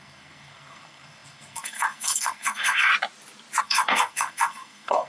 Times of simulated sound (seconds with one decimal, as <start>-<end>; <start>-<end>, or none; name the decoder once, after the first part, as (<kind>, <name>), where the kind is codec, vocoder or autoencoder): 0.0-2.9 (codec, SNAC); 3.6-5.1